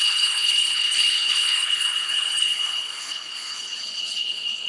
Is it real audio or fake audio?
fake